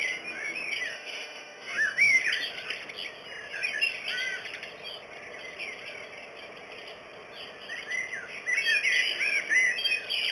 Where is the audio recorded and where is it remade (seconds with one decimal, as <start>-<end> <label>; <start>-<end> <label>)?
0.0-0.9 recorded; 0.9-2.2 remade; 2.2-10.3 recorded